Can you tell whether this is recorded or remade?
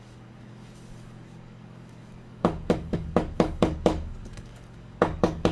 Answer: remade